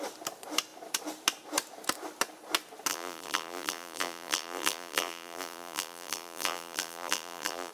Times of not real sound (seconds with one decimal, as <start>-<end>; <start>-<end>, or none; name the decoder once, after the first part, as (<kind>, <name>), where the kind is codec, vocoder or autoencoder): 2.9-7.7 (vocoder, BigVGAN v2)